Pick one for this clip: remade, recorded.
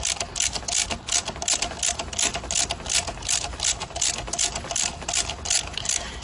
recorded